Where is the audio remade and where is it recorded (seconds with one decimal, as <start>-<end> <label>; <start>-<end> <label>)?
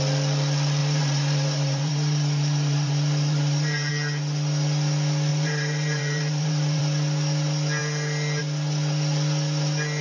0.0-0.8 recorded; 0.8-3.9 remade; 3.9-5.3 recorded; 5.3-6.8 remade; 6.8-10.0 recorded